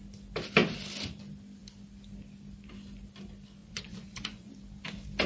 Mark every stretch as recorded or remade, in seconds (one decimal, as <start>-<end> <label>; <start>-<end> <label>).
0.0-3.6 recorded; 3.6-4.5 remade; 4.5-5.3 recorded